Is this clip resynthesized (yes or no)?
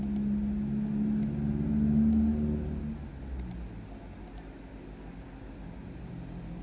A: no